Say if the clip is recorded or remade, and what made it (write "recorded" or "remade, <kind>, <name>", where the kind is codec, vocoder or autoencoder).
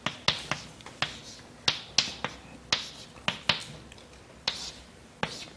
recorded